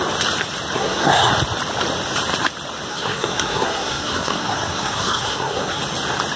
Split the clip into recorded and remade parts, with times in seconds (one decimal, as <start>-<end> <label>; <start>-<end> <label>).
0.0-0.8 recorded; 0.8-1.3 remade; 1.3-2.9 recorded; 2.9-5.8 remade; 5.8-6.4 recorded